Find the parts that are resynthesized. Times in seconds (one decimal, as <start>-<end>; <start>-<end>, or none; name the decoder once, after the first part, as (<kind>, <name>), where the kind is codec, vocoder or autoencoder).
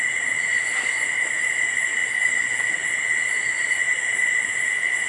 0.5-1.4 (vocoder, BigVGAN v2)